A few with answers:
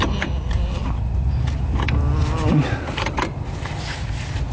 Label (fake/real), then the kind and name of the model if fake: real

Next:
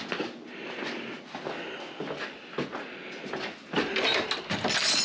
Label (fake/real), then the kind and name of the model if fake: real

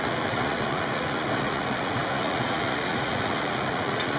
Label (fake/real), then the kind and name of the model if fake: fake, vocoder, Vocos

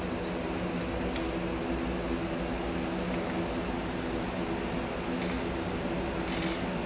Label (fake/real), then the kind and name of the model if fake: real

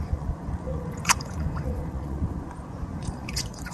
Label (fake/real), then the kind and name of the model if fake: fake, vocoder, Vocos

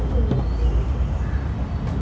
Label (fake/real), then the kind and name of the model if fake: real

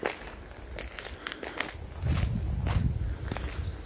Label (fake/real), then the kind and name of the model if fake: real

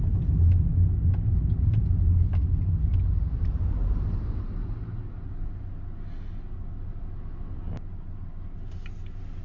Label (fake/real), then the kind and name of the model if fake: real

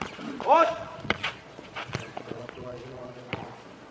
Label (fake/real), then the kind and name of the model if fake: fake, vocoder, Vocos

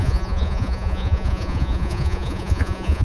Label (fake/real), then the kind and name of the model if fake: fake, vocoder, Vocos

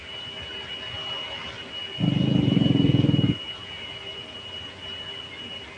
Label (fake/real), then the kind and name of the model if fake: real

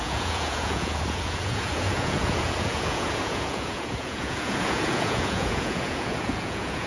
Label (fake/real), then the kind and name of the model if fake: fake, vocoder, Vocos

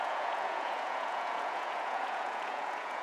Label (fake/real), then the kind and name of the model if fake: fake, vocoder, Vocos